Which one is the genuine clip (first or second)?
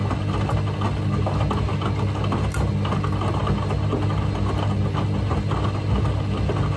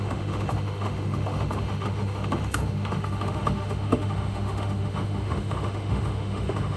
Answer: first